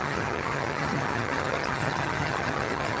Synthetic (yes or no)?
yes